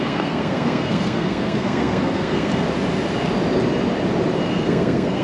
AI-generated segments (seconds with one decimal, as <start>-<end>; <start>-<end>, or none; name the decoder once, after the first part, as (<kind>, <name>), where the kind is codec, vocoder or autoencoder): 0.0-2.5 (codec, SNAC); 4.5-5.2